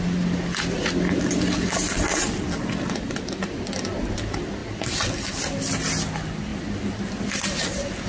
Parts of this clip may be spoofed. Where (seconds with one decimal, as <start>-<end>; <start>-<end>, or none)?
none